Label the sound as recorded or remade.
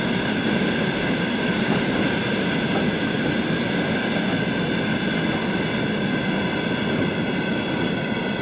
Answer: recorded